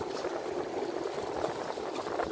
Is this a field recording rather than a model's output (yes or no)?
yes